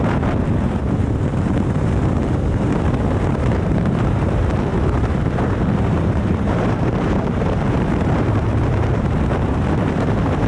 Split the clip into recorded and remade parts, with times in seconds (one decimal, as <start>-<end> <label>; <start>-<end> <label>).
0.0-10.5 remade